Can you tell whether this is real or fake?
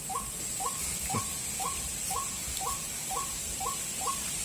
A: real